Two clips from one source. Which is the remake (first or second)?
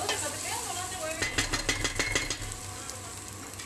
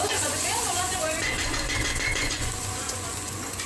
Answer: second